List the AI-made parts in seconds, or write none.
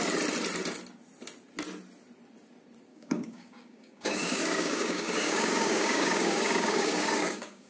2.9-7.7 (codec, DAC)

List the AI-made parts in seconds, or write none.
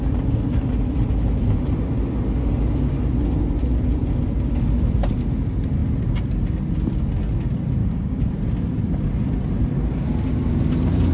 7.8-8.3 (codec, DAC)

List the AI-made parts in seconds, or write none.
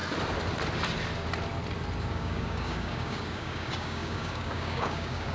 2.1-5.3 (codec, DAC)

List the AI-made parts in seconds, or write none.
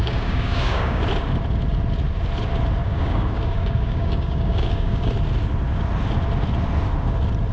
0.0-1.0 (codec, DAC); 2.8-5.1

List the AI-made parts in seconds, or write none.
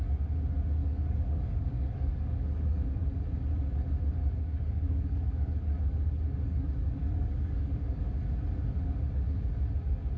0.8-3.2 (codec, DAC); 4.2-8.0